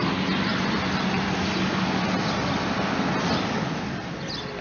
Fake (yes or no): no